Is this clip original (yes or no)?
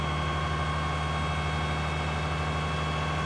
yes